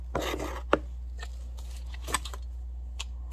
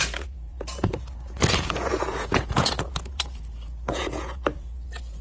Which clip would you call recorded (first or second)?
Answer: first